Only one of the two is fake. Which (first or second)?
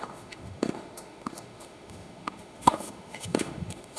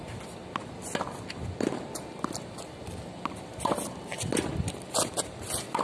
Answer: first